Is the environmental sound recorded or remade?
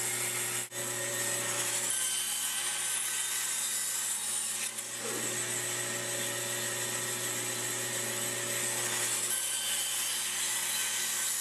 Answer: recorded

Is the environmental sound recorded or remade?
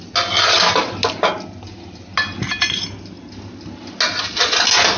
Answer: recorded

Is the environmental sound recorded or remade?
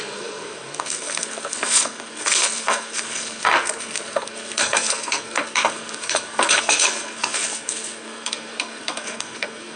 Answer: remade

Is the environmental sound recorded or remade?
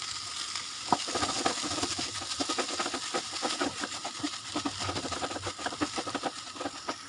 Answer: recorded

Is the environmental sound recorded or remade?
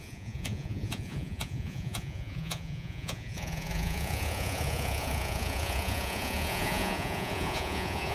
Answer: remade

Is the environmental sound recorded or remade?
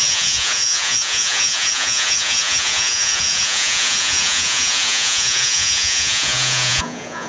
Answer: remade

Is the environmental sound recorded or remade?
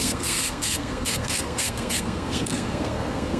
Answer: remade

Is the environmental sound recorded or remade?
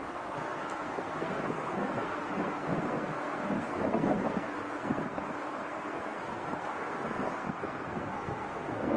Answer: remade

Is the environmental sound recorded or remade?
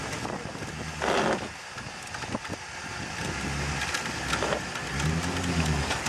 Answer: recorded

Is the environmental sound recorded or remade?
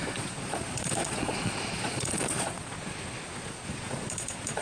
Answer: remade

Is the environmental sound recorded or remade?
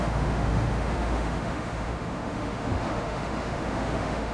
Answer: remade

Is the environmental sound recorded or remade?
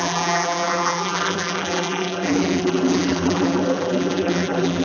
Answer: remade